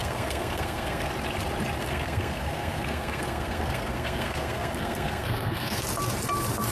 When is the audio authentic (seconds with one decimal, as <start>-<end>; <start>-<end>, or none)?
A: 1.1-1.8; 5.8-6.7